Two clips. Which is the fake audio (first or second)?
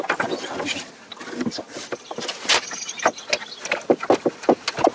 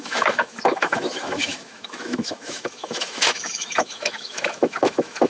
second